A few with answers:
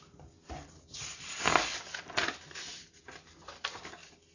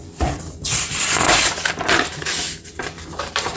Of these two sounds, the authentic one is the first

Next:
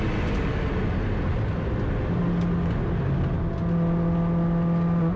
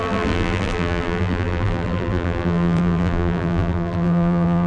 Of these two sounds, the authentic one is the first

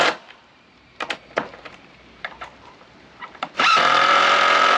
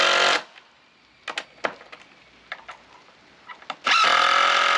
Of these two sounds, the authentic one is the second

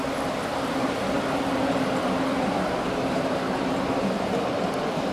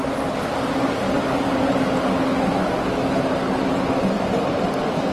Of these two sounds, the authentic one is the second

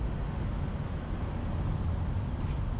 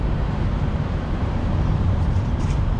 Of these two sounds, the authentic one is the first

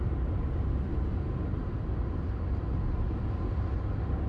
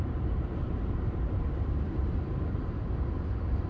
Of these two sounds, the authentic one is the first